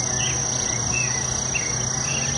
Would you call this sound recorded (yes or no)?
yes